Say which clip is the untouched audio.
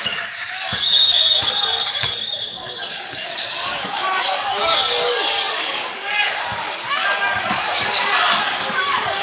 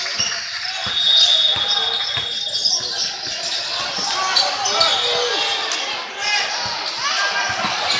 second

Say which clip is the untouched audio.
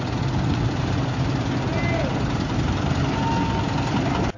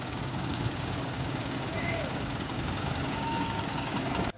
first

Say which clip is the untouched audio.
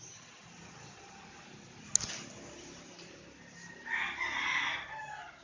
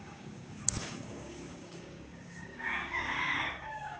first